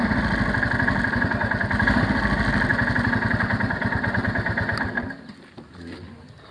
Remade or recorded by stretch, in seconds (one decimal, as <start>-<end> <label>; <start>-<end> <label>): 0.0-6.5 recorded